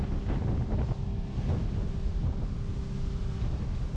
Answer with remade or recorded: recorded